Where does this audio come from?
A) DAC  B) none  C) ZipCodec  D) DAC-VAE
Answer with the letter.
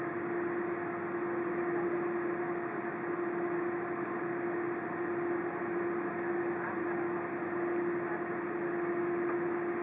B